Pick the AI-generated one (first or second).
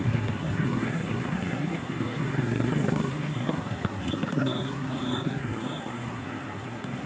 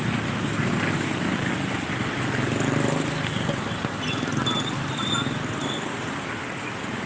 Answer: first